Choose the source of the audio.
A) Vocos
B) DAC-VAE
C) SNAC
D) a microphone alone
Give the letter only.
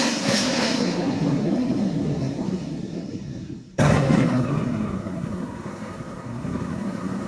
C